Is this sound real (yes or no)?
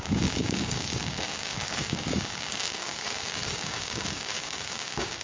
no